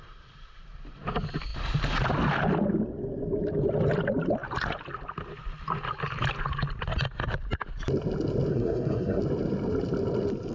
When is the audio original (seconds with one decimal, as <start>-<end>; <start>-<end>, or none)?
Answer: 0.0-8.5; 9.2-10.5